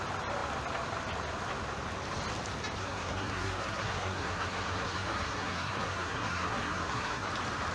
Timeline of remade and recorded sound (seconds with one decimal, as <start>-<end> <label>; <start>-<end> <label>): 0.0-2.8 recorded; 2.8-7.3 remade; 7.3-7.7 recorded